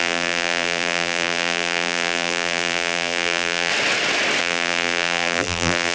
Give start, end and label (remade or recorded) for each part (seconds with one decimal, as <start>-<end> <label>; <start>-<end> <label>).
0.0-3.7 remade; 3.7-4.4 recorded; 4.4-5.9 remade